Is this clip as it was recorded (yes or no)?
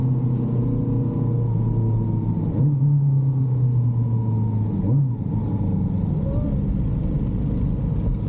yes